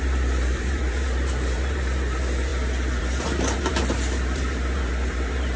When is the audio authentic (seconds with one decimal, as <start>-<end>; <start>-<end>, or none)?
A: 2.5-3.0